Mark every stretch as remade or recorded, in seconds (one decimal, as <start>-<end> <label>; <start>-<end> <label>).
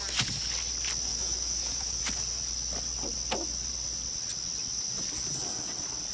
0.0-1.1 recorded; 1.1-2.0 remade; 2.0-6.1 recorded